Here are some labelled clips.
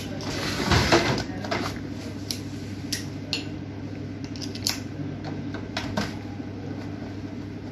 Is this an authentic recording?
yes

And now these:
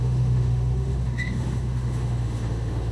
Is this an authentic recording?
no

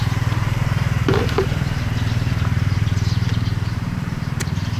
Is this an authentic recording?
no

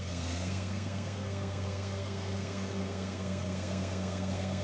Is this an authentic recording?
no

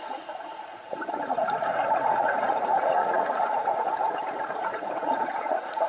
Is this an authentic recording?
no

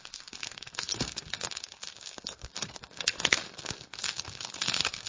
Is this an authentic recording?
no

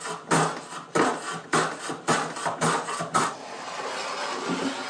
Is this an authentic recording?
yes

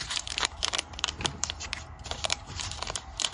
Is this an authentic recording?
no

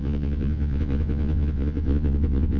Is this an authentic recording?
no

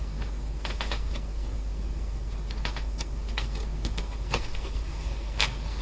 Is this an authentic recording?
no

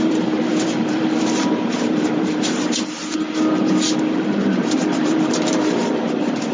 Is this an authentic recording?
no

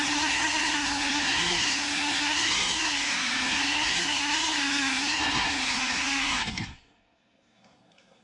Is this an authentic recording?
no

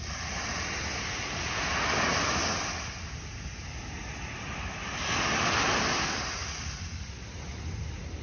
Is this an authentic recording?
yes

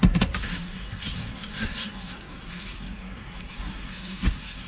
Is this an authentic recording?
no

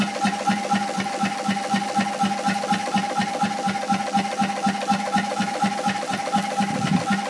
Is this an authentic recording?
yes